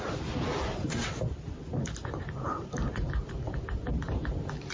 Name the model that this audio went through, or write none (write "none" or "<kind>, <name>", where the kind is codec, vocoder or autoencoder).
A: none